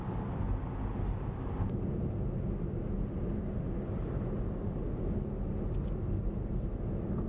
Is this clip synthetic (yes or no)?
no